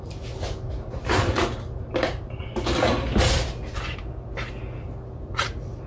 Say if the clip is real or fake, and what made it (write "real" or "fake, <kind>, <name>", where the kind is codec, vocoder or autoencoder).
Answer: real